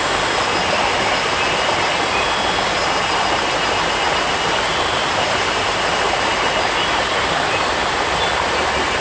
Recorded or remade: recorded